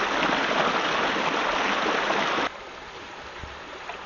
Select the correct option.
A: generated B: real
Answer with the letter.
B